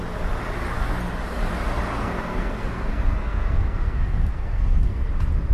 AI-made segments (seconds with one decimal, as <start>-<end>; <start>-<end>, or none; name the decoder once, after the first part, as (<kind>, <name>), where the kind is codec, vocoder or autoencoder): 2.0-5.1 (codec, SNAC)

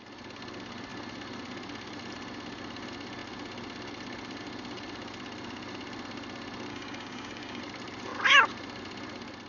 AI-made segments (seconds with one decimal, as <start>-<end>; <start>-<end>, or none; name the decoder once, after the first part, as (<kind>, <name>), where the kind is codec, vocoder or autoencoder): 6.7-7.6 (codec, DAC)

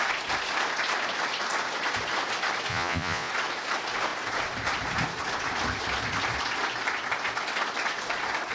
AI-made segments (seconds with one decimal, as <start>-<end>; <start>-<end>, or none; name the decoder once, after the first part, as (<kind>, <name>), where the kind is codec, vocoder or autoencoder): 2.7-3.3 (vocoder, Vocos)

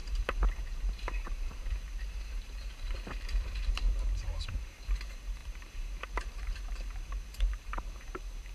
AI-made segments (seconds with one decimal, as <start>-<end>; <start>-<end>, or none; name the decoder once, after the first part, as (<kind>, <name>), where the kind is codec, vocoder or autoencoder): 0.0-8.5 (vocoder, BigVGAN v2)

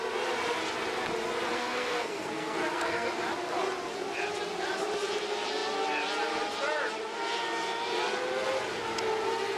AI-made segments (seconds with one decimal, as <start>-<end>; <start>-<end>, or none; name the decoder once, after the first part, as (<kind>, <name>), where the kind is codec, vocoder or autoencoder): 1.5-3.2 (codec, SNAC)

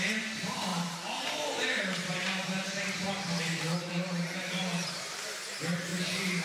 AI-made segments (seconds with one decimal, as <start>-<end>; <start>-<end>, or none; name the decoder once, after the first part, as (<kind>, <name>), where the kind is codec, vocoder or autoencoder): 0.0-6.4 (vocoder, BigVGAN v2)

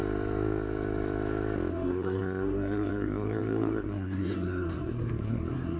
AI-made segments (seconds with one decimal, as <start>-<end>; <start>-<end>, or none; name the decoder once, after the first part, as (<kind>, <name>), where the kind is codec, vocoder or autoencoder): 1.7-5.8 (codec, SNAC)

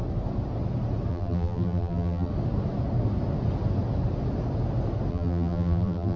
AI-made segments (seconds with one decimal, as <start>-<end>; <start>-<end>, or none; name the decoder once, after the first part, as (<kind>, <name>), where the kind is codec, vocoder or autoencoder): 1.1-2.3 (vocoder, BigVGAN v2); 5.1-6.2